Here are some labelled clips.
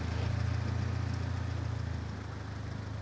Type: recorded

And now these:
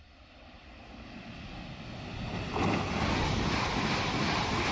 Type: recorded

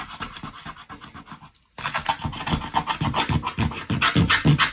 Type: recorded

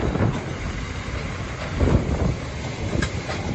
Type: recorded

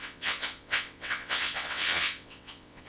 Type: remade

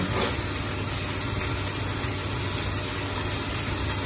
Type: recorded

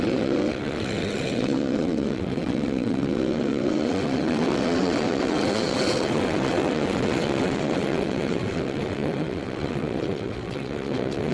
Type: remade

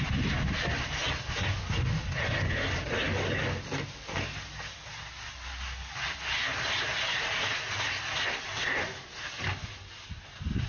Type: recorded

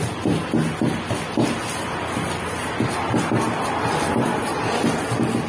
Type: recorded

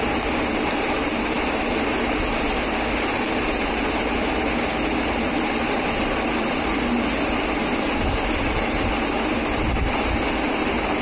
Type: recorded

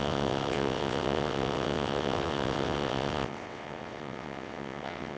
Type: remade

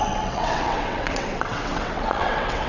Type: remade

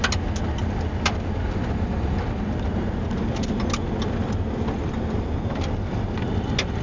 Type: recorded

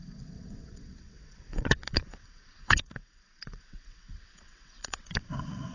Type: remade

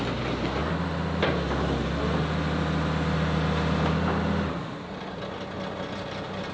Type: recorded